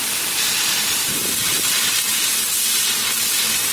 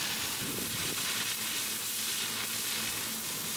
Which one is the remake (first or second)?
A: first